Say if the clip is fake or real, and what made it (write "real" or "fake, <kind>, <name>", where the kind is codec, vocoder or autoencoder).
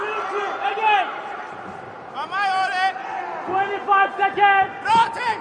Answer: real